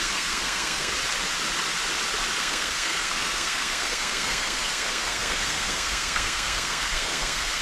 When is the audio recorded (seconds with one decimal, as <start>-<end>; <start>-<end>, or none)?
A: 0.9-2.4